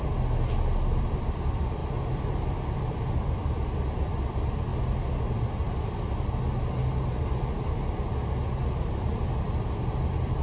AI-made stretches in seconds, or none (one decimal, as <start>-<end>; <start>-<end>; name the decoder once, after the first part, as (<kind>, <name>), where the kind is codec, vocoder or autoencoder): 0.0-1.8 (vocoder, BigVGAN v2); 2.4-4.7; 9.9-10.4